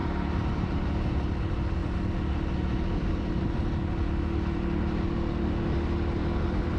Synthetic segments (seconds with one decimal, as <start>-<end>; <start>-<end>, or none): 0.0-0.8